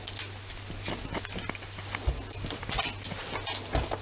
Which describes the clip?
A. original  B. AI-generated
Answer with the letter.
A